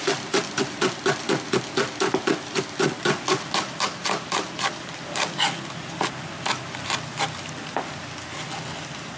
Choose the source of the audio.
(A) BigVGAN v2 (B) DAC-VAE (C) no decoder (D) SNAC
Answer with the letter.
C